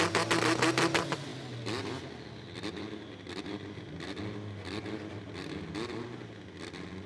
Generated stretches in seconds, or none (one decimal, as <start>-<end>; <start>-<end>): none